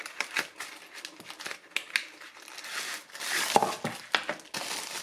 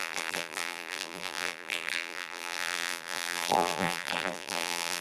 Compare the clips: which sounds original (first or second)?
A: first